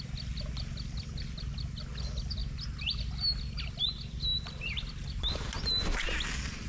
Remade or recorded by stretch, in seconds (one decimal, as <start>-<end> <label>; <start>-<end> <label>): 0.0-6.7 recorded